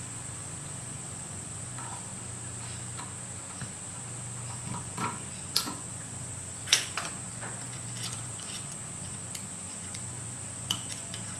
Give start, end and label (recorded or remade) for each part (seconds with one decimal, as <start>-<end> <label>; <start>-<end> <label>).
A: 0.0-2.1 remade; 2.1-4.5 recorded; 4.5-11.4 remade

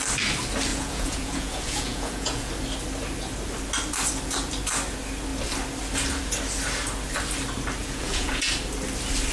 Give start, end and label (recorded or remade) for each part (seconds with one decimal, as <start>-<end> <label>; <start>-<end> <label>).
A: 0.0-0.7 recorded; 0.7-2.5 remade; 2.5-7.8 recorded; 7.8-8.5 remade; 8.5-9.3 recorded

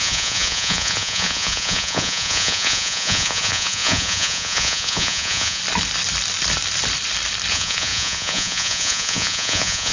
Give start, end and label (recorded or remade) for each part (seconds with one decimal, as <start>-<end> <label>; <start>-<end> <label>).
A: 0.0-5.6 remade; 5.6-7.5 recorded; 7.5-9.9 remade

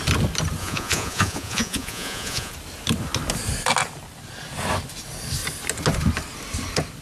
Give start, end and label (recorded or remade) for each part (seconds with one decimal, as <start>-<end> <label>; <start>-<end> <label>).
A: 0.0-0.6 recorded; 0.6-2.5 remade; 2.5-7.0 recorded

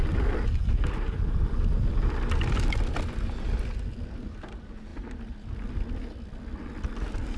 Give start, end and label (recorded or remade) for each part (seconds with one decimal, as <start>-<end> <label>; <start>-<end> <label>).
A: 0.0-7.4 recorded

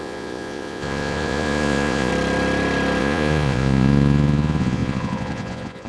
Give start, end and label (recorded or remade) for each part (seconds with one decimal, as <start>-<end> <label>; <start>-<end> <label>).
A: 0.0-2.1 remade; 2.1-3.0 recorded; 3.0-5.9 remade

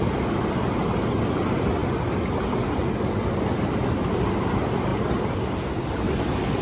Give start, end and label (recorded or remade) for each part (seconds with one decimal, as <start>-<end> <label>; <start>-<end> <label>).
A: 0.0-6.6 recorded

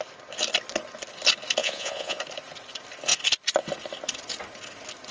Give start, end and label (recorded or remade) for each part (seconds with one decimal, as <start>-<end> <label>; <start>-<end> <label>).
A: 0.0-1.6 recorded; 1.6-2.2 remade; 2.2-5.1 recorded